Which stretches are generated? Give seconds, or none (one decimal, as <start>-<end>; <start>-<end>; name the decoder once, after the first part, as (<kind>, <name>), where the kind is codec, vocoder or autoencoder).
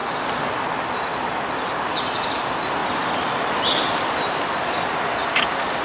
none